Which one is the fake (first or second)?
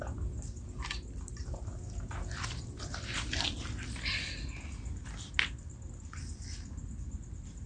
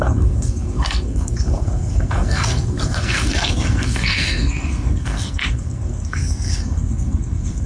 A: second